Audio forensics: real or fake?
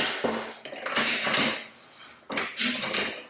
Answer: real